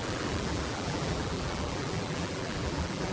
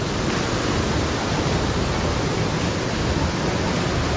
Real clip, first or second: second